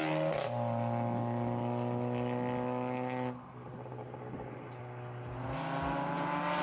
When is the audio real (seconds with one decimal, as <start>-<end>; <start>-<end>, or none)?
0.0-6.6

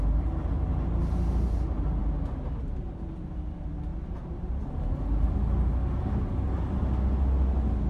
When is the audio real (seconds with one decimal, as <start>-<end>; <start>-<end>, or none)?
0.0-7.9

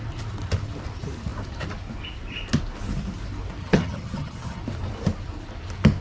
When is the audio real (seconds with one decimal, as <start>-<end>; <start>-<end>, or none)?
0.0-3.6; 4.6-6.0

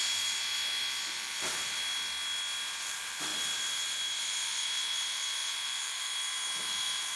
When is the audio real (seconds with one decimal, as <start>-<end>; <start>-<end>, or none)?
1.8-2.8

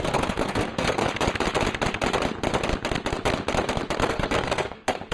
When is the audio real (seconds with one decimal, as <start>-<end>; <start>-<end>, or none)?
1.0-4.1